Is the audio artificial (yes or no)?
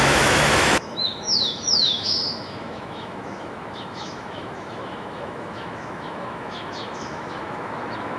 yes